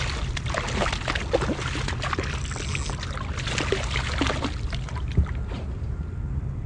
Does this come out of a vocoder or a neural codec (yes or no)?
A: no